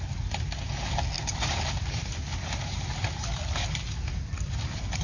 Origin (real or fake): real